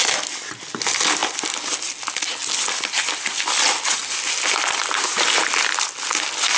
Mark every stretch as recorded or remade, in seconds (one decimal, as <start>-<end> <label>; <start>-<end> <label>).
0.0-6.6 recorded